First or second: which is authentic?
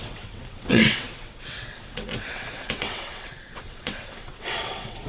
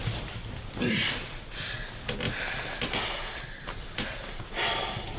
second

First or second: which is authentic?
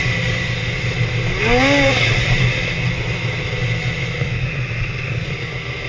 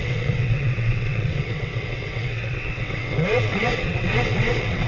first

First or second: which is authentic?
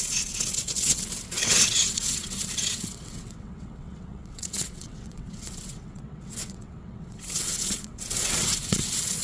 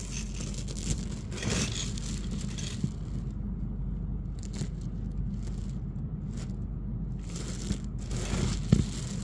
second